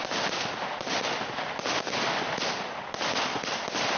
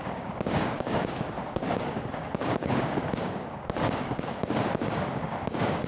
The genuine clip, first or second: first